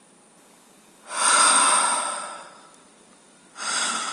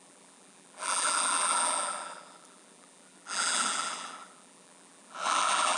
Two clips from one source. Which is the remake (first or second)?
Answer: second